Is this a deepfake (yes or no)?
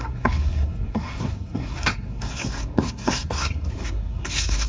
yes